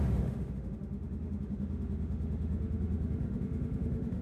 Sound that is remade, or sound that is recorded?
remade